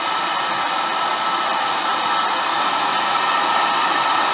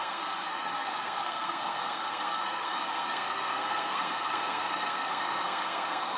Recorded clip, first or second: first